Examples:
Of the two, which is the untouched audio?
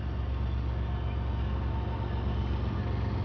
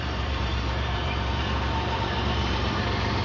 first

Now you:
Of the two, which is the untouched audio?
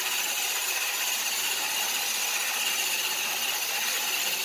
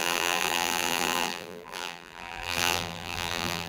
first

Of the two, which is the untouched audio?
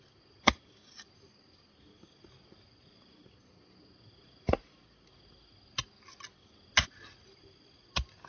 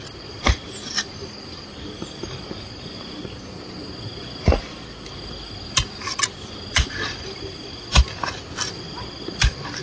first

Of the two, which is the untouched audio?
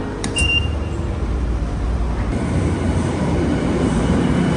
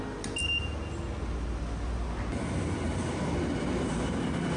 second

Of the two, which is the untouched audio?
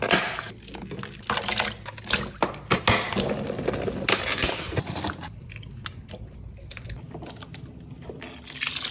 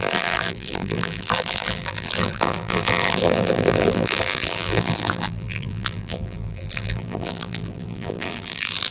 first